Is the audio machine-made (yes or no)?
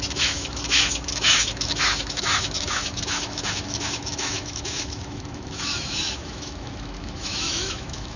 yes